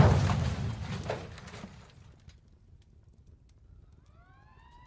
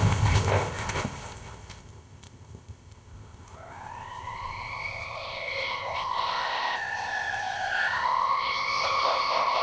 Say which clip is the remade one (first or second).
second